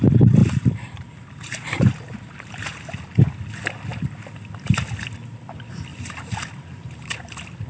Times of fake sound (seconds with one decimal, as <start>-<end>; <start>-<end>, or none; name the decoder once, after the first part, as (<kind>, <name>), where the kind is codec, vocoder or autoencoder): 0.4-2.8 (vocoder, BigVGAN v2); 5.9-7.1